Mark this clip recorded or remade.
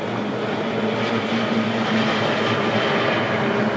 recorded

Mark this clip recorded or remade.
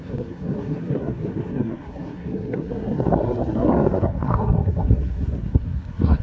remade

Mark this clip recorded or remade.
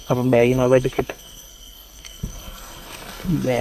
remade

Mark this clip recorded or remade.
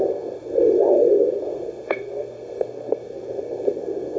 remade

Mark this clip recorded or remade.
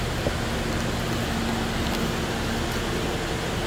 recorded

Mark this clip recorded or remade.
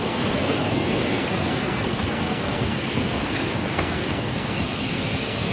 remade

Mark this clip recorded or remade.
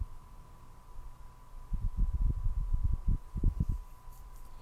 recorded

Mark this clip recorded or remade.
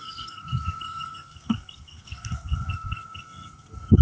remade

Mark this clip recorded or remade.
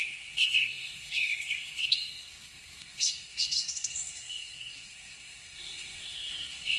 remade